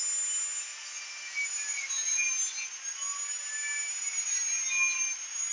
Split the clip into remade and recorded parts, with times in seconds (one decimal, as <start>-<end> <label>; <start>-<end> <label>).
0.0-5.5 recorded